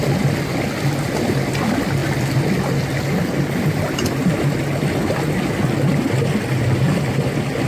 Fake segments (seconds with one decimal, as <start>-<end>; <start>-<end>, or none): none